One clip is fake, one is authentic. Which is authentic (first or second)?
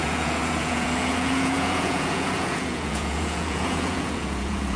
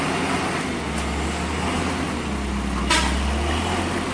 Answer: second